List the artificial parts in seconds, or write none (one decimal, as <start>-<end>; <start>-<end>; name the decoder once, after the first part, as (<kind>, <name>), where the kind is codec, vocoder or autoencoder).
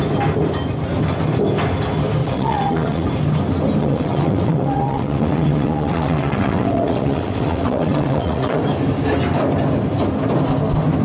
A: 2.2-3.1 (vocoder, WaveNeXt); 3.8-8.6